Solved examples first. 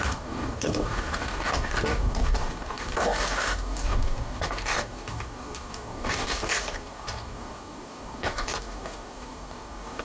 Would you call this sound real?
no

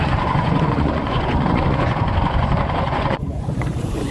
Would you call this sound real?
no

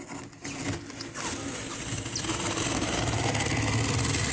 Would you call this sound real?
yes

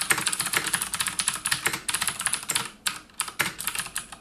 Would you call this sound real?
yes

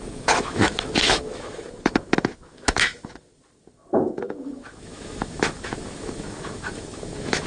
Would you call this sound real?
no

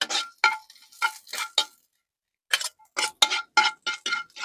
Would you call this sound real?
yes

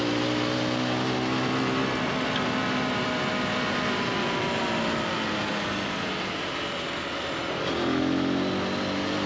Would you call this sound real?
yes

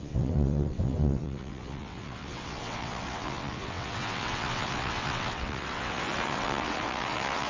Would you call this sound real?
no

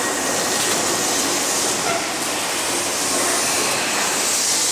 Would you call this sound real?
yes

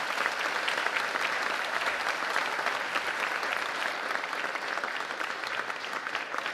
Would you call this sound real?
yes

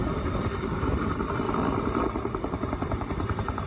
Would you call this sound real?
no